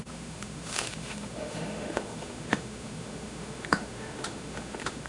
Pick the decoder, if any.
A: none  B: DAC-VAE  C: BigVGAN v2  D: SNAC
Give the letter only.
B